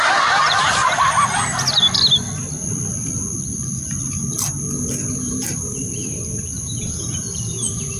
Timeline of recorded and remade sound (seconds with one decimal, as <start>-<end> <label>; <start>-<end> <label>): 0.0-0.8 remade; 0.8-4.2 recorded; 4.2-8.0 remade